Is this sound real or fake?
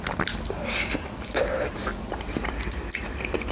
fake